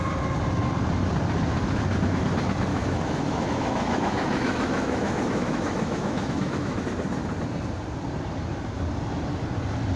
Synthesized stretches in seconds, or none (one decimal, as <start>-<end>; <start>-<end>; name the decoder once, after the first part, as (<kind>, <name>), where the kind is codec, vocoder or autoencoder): 2.7-6.8 (autoencoder, DAC-VAE)

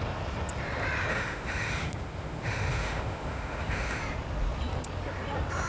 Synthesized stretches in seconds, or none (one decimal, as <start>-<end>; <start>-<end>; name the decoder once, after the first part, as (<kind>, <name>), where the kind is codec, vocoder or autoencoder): 1.1-4.0 (autoencoder, DAC-VAE)

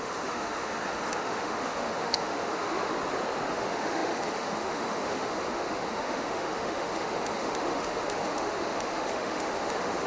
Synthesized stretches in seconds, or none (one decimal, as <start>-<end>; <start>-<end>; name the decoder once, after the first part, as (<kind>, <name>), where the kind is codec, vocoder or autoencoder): 0.0-2.9 (autoencoder, DAC-VAE); 3.5-10.1

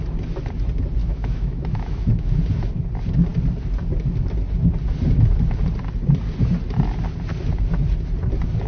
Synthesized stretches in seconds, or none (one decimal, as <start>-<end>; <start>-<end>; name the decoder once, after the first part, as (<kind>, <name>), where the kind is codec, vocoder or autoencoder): 1.0-2.4 (autoencoder, DAC-VAE)

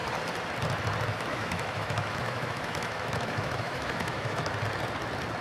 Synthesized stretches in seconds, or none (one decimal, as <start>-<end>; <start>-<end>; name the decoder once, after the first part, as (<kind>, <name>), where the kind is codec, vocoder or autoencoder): 1.3-4.5 (autoencoder, DAC-VAE)